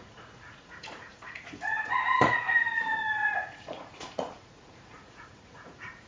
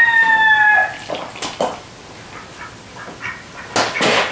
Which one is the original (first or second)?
second